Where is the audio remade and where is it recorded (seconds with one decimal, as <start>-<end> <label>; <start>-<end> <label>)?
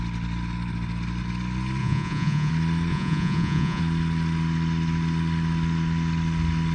0.0-1.8 recorded; 1.8-2.5 remade; 2.5-2.9 recorded; 2.9-3.8 remade; 3.8-6.7 recorded